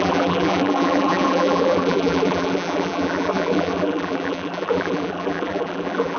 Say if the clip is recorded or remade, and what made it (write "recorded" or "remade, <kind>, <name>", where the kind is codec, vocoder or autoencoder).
remade, vocoder, BigVGAN v2